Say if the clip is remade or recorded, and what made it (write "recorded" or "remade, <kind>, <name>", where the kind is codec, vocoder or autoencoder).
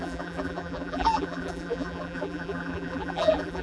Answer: remade, vocoder, BigVGAN v2